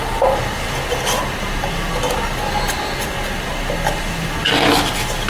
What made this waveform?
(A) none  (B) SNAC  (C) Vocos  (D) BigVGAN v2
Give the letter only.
A